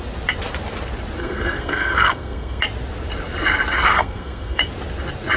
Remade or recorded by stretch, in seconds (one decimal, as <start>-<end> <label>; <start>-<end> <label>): 0.0-1.2 recorded; 1.2-2.6 remade; 2.6-3.9 recorded; 3.9-4.7 remade; 4.7-5.4 recorded